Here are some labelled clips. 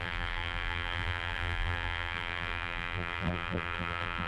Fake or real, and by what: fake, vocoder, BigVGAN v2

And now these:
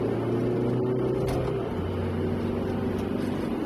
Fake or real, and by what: real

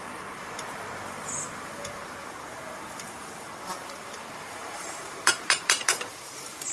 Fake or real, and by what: fake, vocoder, BigVGAN v2